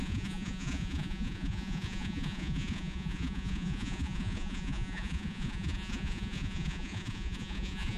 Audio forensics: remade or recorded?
remade